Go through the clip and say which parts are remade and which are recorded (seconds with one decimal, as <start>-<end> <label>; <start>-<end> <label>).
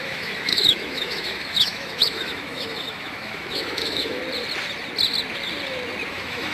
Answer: 0.0-4.2 remade; 4.2-6.1 recorded; 6.1-6.5 remade